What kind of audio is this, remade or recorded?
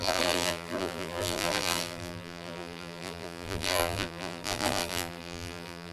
remade